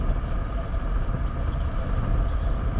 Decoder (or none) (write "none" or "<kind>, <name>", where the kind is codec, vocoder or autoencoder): none